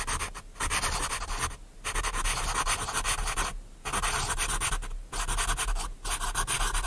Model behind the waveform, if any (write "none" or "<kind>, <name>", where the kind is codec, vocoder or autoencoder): none